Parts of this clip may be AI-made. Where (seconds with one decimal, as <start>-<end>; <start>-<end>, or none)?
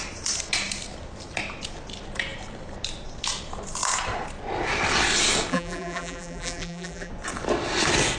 5.5-7.1